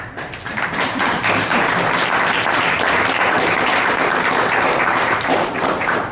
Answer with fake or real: fake